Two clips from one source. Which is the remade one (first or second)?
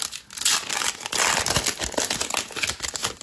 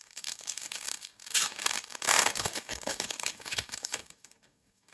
second